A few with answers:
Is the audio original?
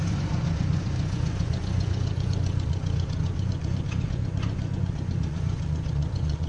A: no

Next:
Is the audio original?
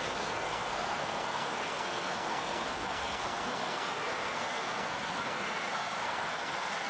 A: no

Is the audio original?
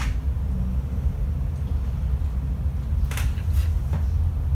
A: yes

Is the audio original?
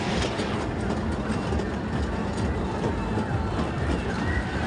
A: yes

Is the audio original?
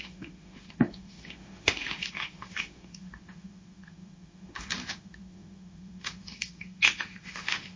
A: no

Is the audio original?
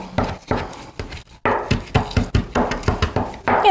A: yes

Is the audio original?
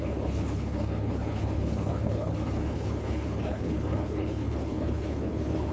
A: no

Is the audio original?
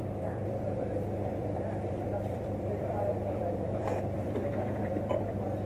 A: no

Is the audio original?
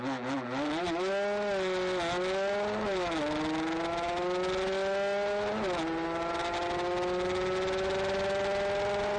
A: yes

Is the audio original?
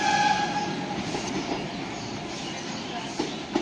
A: yes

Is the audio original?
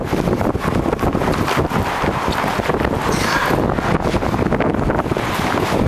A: yes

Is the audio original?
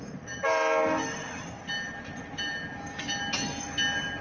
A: yes